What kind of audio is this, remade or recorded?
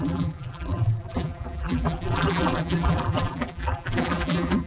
remade